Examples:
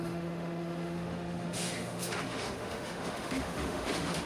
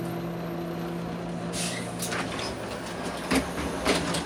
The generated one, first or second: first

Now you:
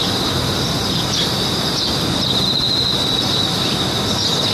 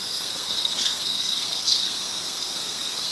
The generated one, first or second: second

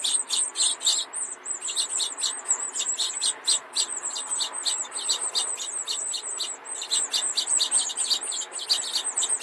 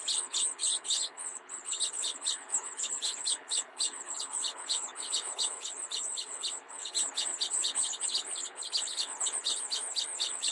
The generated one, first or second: second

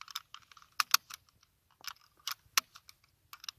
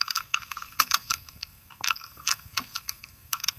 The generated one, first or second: second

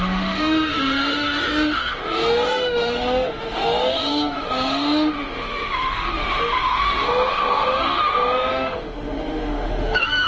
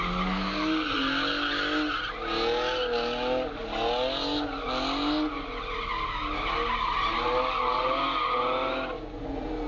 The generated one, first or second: first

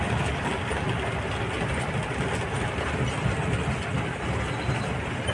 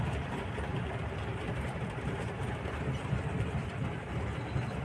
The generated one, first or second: second